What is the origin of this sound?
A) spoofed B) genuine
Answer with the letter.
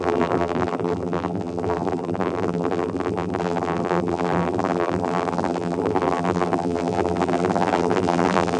A